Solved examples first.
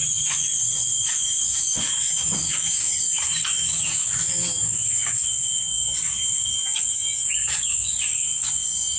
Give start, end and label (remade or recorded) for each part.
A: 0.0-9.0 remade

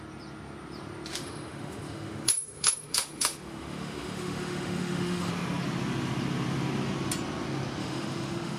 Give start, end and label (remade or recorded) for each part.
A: 0.0-1.1 recorded; 1.1-5.3 remade; 5.3-7.8 recorded; 7.8-8.6 remade

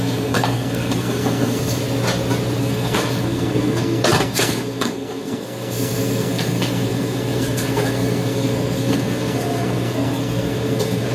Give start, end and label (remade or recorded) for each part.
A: 0.0-1.8 remade; 1.8-2.6 recorded; 2.6-11.1 remade

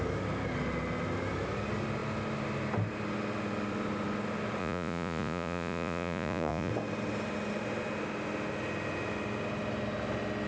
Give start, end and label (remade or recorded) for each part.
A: 0.0-4.6 recorded; 4.6-6.7 remade; 6.7-10.5 recorded

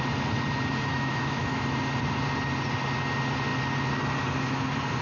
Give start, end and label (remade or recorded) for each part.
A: 0.0-0.9 recorded; 0.9-1.6 remade; 1.6-5.0 recorded